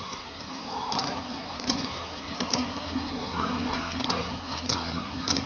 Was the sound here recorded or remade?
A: remade